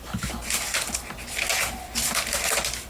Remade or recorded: recorded